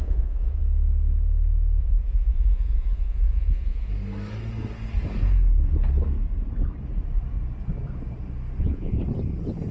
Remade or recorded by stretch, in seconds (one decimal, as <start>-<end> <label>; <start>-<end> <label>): 0.0-0.6 remade; 0.6-1.8 recorded; 1.8-3.9 remade; 3.9-8.6 recorded; 8.6-9.0 remade; 9.0-9.7 recorded